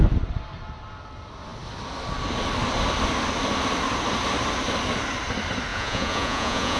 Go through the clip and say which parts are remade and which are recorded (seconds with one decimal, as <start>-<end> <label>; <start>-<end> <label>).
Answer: 0.0-5.7 recorded; 5.7-6.8 remade

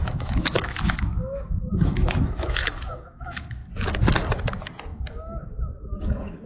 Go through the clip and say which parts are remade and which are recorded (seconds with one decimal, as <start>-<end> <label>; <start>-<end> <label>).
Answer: 0.0-3.6 remade; 3.6-5.2 recorded; 5.2-6.5 remade

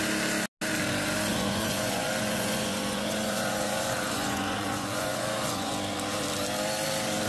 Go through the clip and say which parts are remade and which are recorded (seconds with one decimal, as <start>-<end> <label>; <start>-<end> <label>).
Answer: 0.0-1.3 recorded; 1.3-5.7 remade; 5.7-7.3 recorded

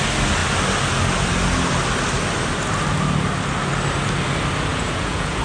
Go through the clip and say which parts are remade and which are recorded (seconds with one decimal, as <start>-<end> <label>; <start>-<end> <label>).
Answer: 0.0-4.7 recorded; 4.7-5.4 remade

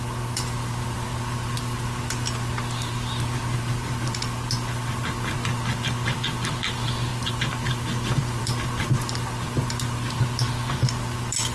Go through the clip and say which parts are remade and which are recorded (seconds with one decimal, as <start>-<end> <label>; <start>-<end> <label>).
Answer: 0.0-11.5 recorded